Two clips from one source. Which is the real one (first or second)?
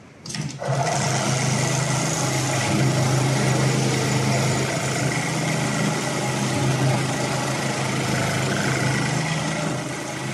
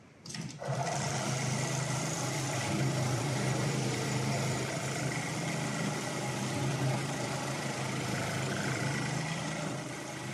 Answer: first